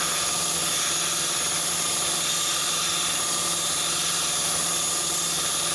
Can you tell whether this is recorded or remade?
recorded